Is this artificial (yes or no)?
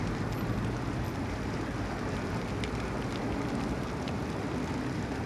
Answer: no